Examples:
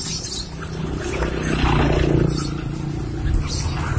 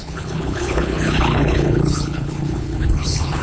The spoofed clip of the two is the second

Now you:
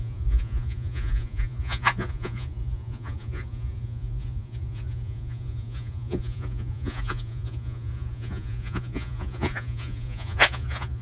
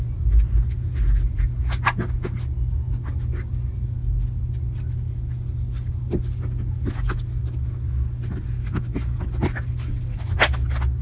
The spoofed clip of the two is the first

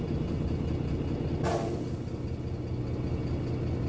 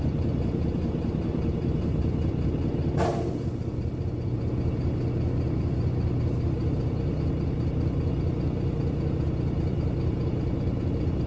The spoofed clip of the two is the second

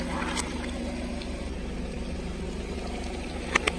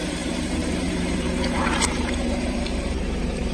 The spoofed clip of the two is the second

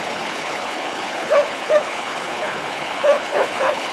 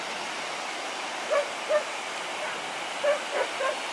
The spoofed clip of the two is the first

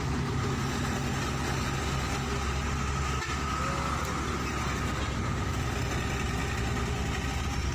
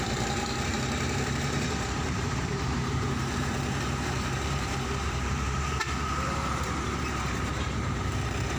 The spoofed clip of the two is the second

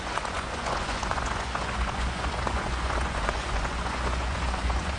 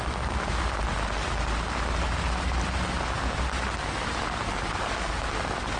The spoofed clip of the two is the first